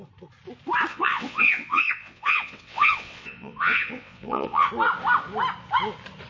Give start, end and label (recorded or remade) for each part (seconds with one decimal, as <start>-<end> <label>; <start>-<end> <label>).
0.0-0.9 recorded; 0.9-4.7 remade; 4.7-6.3 recorded